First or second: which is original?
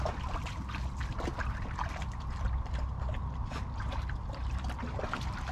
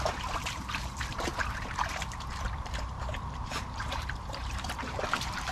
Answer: first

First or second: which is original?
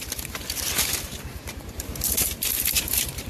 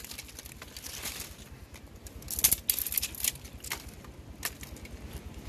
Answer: second